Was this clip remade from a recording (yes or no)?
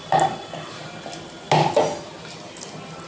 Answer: no